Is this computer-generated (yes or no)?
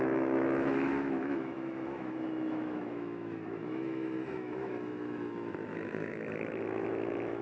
yes